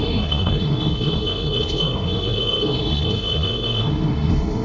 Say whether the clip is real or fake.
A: fake